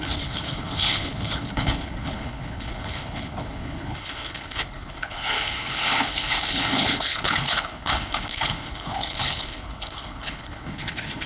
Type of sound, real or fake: fake